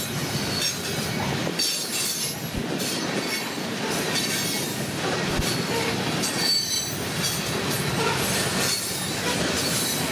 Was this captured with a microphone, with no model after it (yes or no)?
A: yes